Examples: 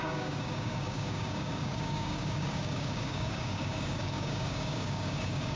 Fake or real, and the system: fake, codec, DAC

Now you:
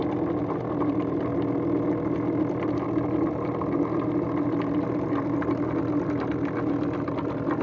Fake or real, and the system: real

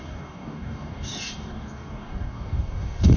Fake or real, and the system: fake, codec, DAC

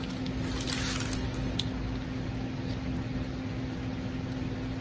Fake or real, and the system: real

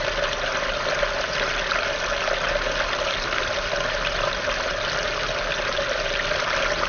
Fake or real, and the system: real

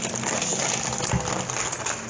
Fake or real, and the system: real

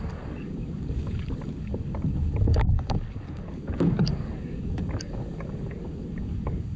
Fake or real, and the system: fake, codec, DAC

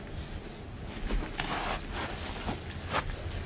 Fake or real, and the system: real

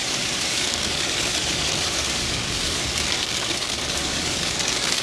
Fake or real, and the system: fake, codec, DAC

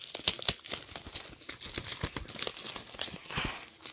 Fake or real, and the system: real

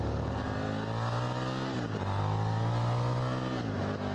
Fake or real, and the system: real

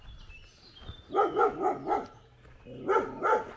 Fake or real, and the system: real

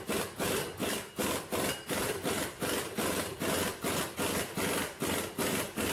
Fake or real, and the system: real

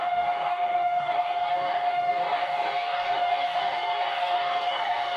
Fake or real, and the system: fake, codec, DAC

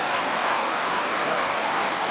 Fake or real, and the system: fake, codec, DAC